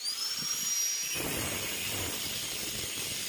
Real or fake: real